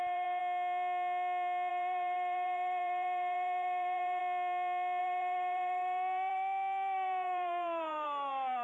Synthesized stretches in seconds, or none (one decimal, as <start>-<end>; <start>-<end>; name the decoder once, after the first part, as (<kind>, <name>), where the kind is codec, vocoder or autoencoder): 0.0-0.4 (vocoder, BigVGAN v2); 1.7-4.2; 5.0-8.6